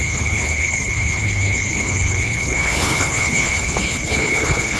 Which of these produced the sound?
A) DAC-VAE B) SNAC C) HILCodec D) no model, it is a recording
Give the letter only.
C